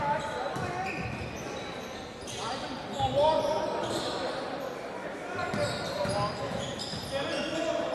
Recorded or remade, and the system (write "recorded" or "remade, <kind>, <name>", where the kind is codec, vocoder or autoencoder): recorded